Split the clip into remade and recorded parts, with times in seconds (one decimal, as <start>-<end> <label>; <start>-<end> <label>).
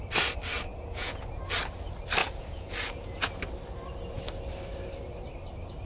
0.0-0.7 recorded; 0.7-1.3 remade; 1.3-2.2 recorded; 2.2-3.3 remade; 3.3-5.9 recorded